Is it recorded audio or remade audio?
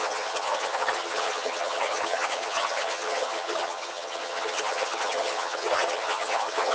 remade